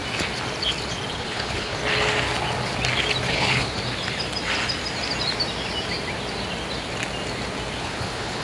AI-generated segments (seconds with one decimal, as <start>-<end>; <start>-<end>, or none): 1.1-1.8; 3.2-3.8; 7.8-8.4